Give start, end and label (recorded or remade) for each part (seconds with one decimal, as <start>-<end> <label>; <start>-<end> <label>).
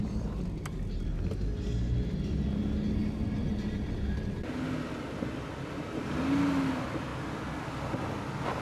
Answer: 0.0-8.6 recorded